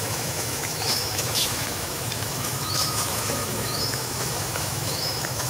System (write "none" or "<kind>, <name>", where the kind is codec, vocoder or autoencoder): autoencoder, DAC-VAE